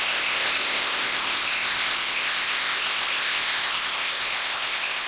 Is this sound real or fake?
fake